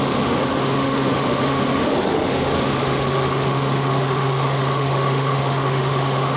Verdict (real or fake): fake